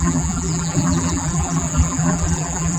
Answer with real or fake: fake